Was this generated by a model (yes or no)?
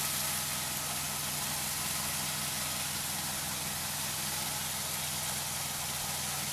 no